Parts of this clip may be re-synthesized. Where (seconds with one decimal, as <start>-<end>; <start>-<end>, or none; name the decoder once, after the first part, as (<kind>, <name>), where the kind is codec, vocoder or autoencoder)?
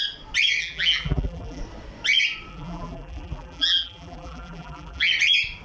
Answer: 0.6-1.6 (vocoder, BigVGAN v2); 2.5-5.1